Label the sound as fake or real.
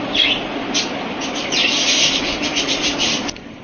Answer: fake